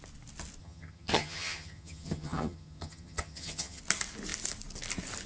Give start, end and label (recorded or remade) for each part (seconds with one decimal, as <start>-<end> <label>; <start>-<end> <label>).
0.0-0.6 recorded; 0.6-3.8 remade; 3.8-5.3 recorded